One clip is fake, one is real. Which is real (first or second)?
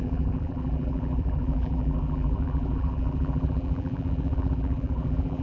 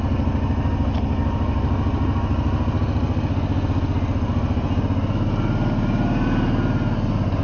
second